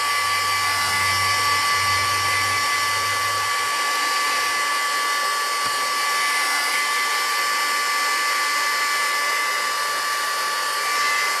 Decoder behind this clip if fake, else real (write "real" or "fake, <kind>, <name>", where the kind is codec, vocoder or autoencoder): real